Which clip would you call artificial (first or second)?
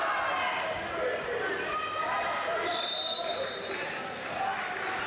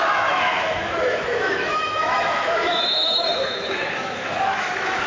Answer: second